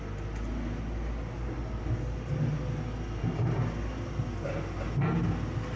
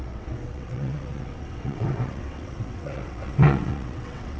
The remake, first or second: second